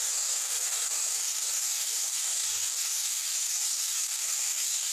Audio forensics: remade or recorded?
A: remade